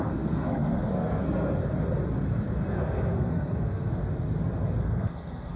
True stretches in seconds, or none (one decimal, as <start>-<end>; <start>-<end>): 1.6-2.7; 4.0-4.8